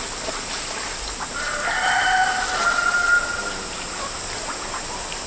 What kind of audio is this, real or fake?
real